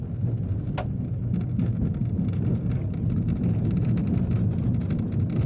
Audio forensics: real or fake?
real